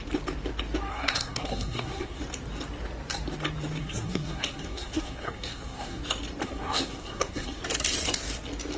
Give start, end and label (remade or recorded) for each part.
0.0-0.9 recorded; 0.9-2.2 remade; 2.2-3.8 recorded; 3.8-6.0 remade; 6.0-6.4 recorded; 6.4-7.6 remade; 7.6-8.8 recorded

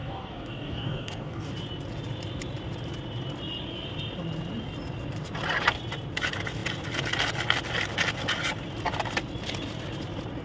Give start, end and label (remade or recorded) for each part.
0.0-1.5 remade; 1.5-10.4 recorded